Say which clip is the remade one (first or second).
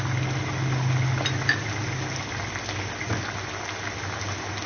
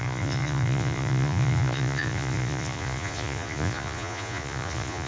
second